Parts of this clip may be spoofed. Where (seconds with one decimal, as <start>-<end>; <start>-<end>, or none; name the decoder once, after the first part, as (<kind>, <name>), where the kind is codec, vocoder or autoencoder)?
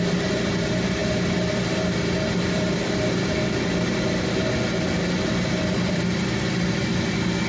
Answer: none